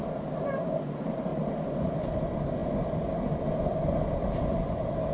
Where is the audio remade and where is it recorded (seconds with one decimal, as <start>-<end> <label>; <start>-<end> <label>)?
0.0-5.1 recorded